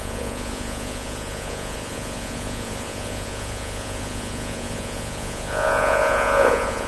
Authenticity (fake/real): fake